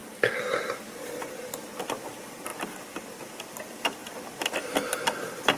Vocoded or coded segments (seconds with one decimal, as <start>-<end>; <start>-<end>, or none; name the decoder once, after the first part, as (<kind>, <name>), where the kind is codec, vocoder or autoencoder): 1.8-2.5 (vocoder, BigVGAN v2); 3.5-5.6